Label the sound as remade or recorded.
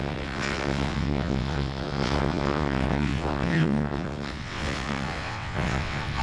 remade